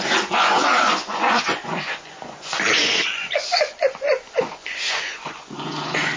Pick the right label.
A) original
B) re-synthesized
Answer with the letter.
B